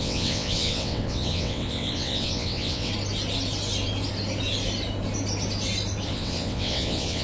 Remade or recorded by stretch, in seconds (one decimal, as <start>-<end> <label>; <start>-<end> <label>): 0.0-2.9 remade; 2.9-6.1 recorded; 6.1-7.2 remade